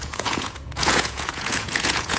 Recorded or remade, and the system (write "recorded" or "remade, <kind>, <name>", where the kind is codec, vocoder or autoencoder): remade, vocoder, Vocos